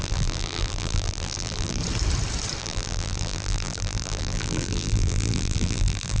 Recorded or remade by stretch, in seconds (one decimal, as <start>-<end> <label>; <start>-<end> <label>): 0.0-1.8 remade; 1.8-2.6 recorded; 2.6-6.2 remade